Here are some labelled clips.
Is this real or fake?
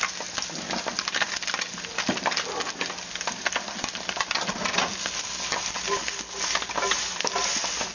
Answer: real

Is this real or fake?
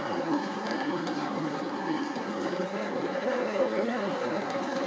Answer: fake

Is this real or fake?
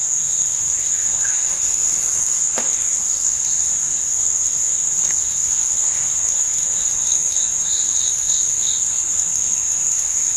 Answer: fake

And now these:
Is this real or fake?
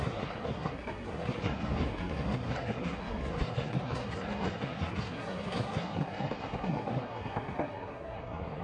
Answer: fake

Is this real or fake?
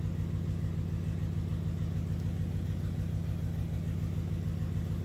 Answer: real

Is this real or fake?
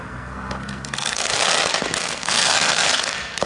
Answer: fake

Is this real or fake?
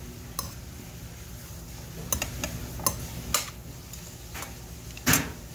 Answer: real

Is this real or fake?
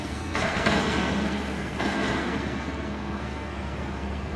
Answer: fake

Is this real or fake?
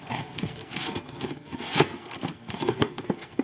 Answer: fake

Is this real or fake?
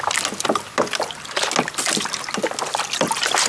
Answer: real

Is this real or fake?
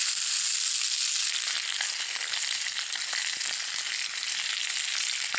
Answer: real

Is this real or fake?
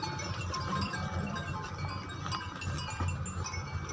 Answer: real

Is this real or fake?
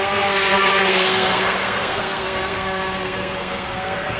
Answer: fake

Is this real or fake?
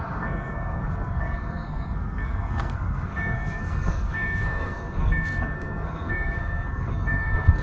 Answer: fake